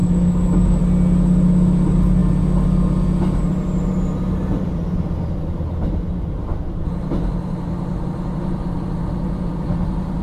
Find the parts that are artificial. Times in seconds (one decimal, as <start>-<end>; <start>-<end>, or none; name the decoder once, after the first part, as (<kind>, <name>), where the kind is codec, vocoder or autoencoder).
0.0-0.8 (codec, DAC)